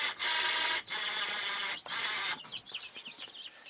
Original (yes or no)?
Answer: yes